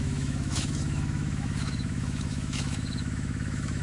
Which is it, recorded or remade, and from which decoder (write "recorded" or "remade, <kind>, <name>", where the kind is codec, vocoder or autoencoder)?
remade, autoencoder, DAC-VAE